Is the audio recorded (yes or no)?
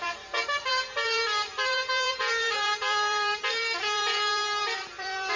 no